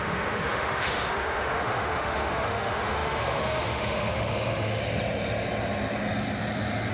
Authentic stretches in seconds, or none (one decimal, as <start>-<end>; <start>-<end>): 4.8-6.9